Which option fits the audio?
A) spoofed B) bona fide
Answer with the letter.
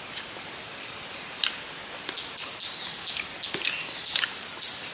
B